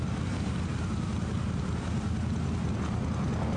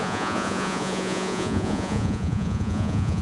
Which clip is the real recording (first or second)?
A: first